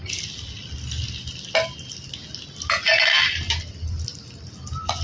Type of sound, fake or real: real